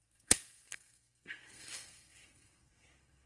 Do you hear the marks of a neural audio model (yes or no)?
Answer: yes